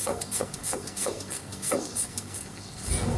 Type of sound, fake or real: fake